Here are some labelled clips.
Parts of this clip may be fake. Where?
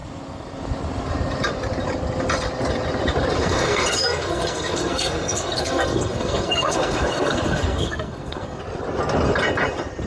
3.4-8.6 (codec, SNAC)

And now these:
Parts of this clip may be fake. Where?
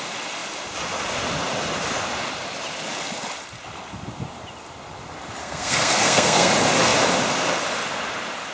5.4-6.5 (codec, SNAC)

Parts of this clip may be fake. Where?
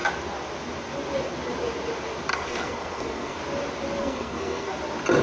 2.3-3.4 (codec, SNAC); 4.0-4.7